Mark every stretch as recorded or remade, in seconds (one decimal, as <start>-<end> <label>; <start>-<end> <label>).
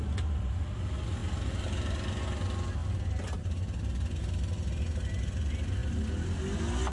0.0-6.9 recorded